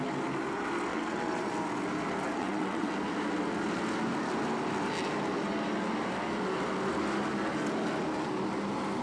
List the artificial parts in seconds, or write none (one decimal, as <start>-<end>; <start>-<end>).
0.9-1.5; 2.4-2.9